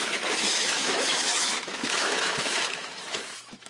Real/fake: fake